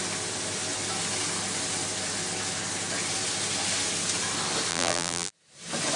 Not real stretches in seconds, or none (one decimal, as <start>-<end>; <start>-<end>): 4.7-5.3